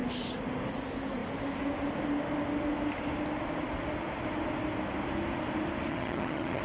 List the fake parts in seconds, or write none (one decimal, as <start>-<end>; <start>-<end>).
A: 5.9-6.6